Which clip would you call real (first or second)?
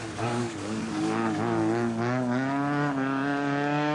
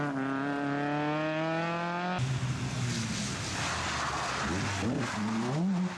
second